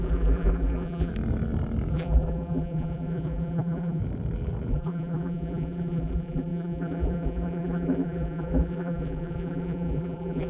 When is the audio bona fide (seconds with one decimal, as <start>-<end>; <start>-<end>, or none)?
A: 1.1-1.9; 4.0-4.7